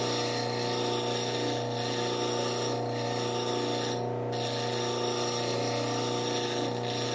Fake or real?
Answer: real